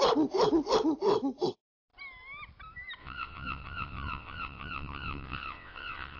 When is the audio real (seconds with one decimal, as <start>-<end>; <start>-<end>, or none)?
0.0-3.0

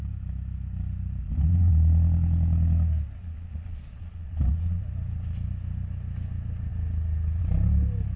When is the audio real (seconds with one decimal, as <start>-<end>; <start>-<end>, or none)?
0.0-1.2; 1.7-3.2; 4.8-8.2

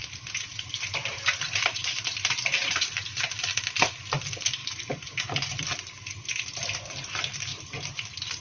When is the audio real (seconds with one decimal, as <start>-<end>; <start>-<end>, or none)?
3.2-4.6; 5.6-8.4